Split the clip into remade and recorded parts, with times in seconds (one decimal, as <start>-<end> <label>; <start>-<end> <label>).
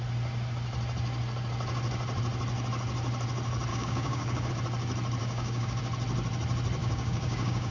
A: 0.0-3.7 recorded; 3.7-4.5 remade; 4.5-5.2 recorded; 5.2-5.8 remade; 5.8-6.8 recorded; 6.8-7.7 remade